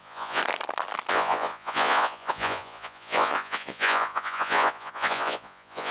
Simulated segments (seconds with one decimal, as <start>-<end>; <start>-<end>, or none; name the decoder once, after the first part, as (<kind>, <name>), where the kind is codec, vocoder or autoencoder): 0.0-0.4 (vocoder, Vocos); 1.1-5.9